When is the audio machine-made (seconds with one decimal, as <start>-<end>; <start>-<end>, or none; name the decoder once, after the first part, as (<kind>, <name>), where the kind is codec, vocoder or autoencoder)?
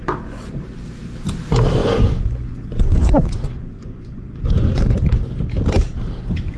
0.0-0.6 (vocoder, Vocos); 1.8-4.8